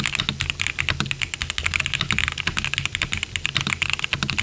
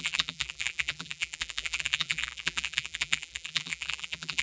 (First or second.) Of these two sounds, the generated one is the second